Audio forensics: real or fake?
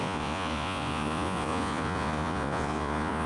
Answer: fake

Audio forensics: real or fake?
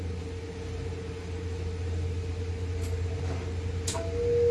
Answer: real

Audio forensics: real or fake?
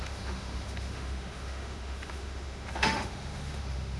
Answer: fake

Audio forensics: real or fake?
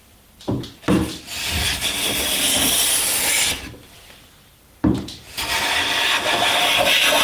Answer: real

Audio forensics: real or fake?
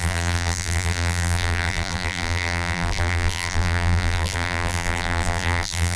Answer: fake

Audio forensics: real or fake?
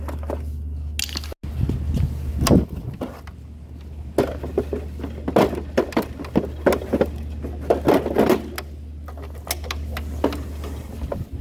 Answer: real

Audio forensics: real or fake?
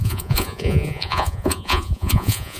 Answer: fake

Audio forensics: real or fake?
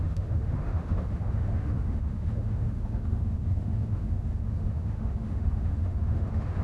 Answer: fake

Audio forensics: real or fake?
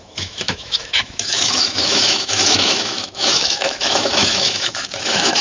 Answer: fake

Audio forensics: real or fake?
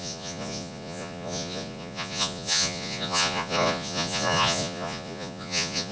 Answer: fake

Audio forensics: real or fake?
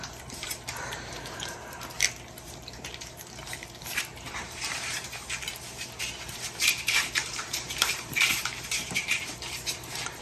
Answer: fake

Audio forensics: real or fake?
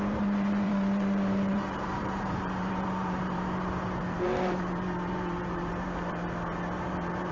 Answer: fake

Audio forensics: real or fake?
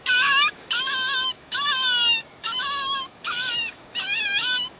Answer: fake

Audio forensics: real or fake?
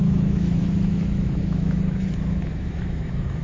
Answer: fake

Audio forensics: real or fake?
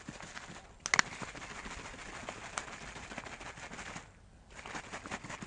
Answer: real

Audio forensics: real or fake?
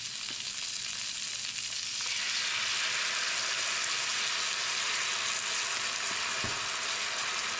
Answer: real